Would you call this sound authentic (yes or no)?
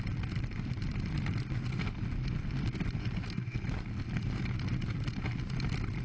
yes